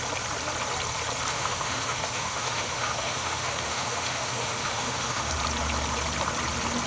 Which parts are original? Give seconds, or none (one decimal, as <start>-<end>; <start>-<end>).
0.0-1.3; 5.3-6.9